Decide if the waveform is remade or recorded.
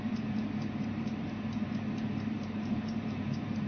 remade